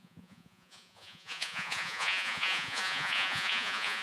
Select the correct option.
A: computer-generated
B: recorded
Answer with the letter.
A